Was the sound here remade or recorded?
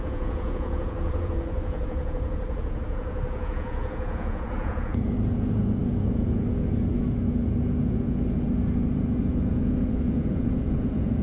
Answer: remade